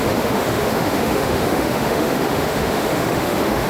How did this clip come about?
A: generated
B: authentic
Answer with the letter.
A